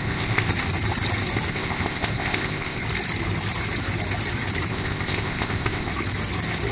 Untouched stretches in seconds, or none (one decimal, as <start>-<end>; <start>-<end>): 0.5-1.5; 2.8-4.7; 5.9-6.7